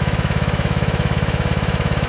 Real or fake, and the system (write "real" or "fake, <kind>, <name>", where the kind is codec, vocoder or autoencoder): fake, autoencoder, DAC-VAE